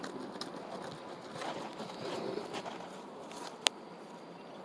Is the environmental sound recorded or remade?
recorded